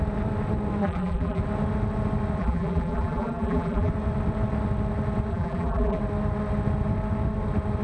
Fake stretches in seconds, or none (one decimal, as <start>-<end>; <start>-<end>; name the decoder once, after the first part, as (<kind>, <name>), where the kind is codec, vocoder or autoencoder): 0.8-1.4 (vocoder, BigVGAN v2); 2.4-3.9; 5.3-6.0